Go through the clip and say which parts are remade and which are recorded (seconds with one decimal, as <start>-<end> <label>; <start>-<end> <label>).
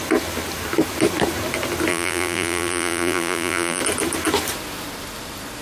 0.0-1.9 recorded; 1.9-3.8 remade; 3.8-5.6 recorded